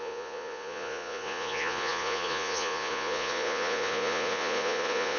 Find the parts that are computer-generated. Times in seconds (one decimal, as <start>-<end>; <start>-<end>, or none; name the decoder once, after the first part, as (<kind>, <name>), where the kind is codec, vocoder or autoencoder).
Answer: 0.0-5.2 (vocoder, Vocos)